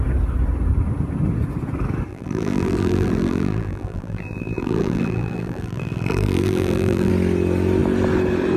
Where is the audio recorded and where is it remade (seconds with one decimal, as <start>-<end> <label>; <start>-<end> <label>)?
0.0-2.1 recorded; 2.1-7.1 remade; 7.1-8.6 recorded